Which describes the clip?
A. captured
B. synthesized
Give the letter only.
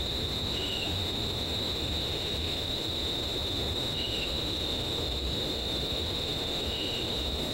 B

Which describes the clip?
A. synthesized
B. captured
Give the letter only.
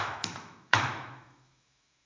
A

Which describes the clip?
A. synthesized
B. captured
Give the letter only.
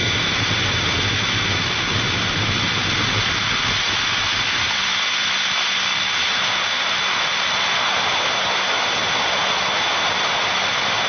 B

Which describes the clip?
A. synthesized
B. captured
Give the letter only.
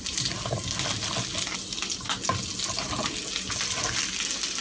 B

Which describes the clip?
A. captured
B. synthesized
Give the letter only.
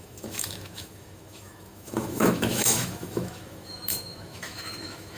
B